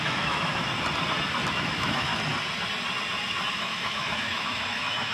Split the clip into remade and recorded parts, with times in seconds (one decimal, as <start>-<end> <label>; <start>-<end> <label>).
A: 0.0-0.7 remade; 0.7-1.5 recorded; 1.5-2.1 remade; 2.1-3.5 recorded; 3.5-5.1 remade